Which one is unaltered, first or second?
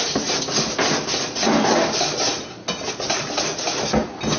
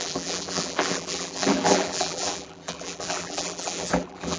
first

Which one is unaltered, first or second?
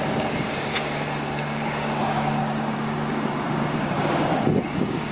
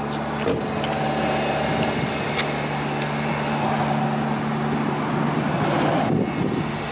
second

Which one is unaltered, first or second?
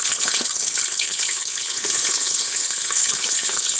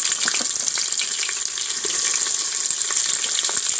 second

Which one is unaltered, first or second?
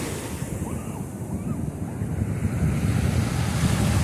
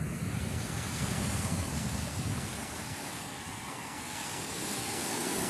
first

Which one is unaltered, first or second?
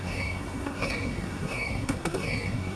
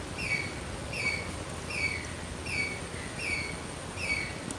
second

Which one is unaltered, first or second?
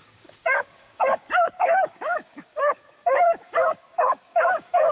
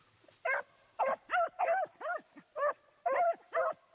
second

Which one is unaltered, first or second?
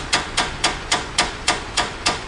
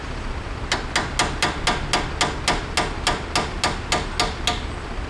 second